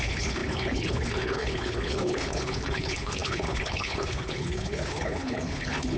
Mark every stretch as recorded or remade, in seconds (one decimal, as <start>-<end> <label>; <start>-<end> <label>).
0.0-6.0 remade